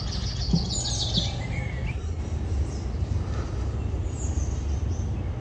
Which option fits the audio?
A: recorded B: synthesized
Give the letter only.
A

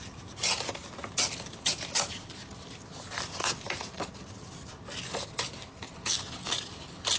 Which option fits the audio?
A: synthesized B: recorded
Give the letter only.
B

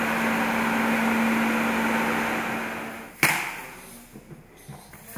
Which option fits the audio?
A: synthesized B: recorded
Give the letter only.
B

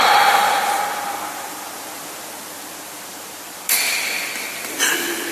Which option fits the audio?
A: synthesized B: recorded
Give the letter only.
B